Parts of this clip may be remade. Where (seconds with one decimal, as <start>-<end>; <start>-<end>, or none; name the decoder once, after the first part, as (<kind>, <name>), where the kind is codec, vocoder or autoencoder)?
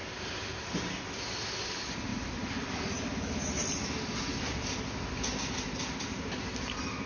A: none